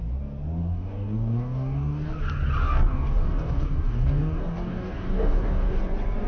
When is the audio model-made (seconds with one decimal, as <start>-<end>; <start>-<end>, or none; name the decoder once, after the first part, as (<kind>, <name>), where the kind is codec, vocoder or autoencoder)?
0.6-2.1 (codec, DAC); 2.6-5.8